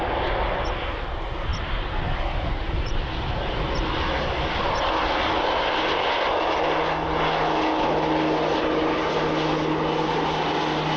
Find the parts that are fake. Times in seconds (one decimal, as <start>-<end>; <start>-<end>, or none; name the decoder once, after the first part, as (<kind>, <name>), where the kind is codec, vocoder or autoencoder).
none

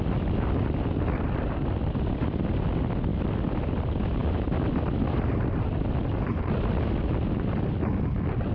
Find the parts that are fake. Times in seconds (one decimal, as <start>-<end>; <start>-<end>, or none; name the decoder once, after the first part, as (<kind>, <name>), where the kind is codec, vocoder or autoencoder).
none

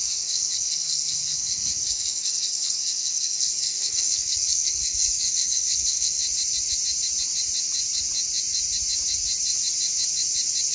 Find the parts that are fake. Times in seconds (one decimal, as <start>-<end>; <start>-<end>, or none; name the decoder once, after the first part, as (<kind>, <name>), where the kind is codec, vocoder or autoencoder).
0.0-6.2 (codec, SNAC)

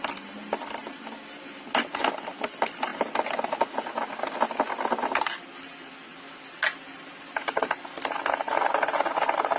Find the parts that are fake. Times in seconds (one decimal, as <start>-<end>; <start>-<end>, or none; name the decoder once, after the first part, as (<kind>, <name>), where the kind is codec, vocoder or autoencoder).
none

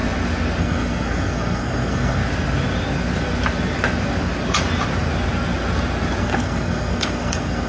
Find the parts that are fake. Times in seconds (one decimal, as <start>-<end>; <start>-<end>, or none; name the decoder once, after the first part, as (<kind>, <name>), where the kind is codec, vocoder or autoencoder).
0.6-2.2 (codec, SNAC); 6.2-7.7

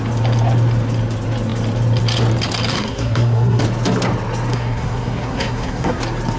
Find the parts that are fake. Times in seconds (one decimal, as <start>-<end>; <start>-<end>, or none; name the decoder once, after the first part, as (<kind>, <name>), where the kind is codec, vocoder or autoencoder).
2.7-3.6 (codec, SNAC); 4.5-6.0

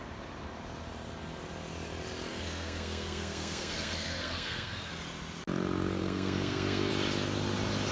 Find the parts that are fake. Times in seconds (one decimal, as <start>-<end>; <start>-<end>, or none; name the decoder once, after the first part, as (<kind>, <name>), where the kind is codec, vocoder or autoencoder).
2.3-4.9 (codec, SNAC); 6.0-6.9